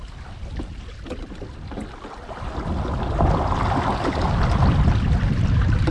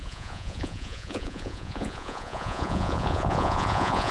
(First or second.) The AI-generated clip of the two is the second